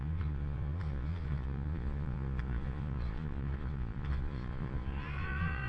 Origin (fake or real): fake